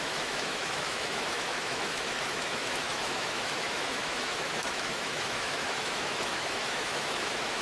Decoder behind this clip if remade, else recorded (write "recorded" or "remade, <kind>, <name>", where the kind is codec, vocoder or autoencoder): remade, autoencoder, DAC-VAE